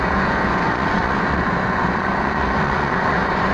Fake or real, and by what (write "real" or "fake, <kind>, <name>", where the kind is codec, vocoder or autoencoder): fake, vocoder, Vocos